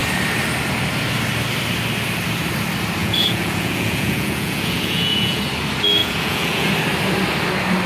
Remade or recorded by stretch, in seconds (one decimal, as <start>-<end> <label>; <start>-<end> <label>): 0.0-3.0 recorded; 3.0-5.4 remade; 5.4-6.0 recorded; 6.0-6.7 remade; 6.7-7.9 recorded